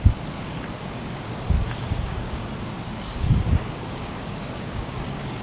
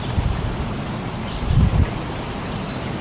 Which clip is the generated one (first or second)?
first